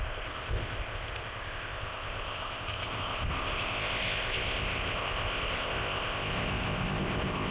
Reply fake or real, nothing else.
fake